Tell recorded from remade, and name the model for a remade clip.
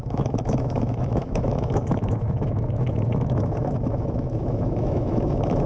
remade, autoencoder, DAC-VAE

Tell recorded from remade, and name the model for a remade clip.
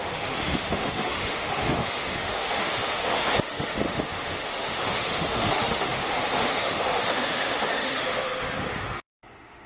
remade, autoencoder, DAC-VAE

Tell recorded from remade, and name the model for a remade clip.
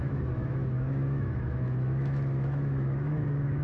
remade, autoencoder, DAC-VAE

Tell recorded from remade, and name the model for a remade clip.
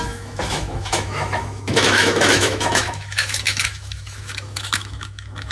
remade, autoencoder, DAC-VAE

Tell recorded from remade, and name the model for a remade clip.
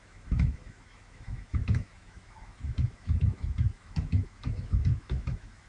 remade, autoencoder, DAC-VAE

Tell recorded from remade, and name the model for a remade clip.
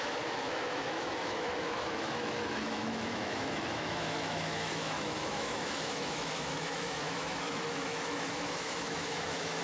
remade, autoencoder, DAC-VAE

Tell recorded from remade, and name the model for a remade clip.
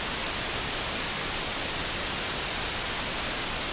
recorded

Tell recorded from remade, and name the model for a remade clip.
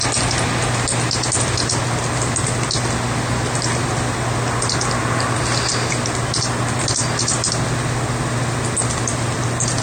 recorded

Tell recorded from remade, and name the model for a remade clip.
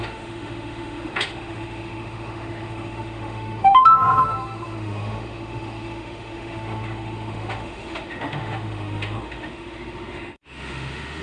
remade, autoencoder, DAC-VAE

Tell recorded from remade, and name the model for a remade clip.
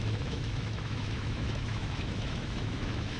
remade, autoencoder, DAC-VAE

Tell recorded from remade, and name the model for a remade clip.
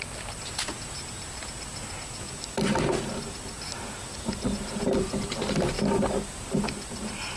recorded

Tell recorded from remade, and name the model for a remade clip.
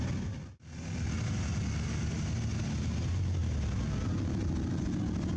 recorded